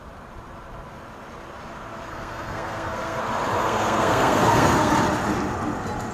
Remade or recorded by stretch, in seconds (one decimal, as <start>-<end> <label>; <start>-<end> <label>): 0.0-2.1 recorded; 2.1-3.2 remade; 3.2-3.6 recorded; 3.6-4.9 remade; 4.9-6.1 recorded